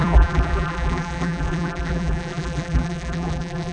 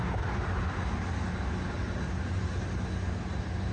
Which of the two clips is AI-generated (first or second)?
first